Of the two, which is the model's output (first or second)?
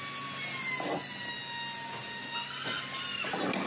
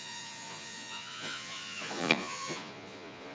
second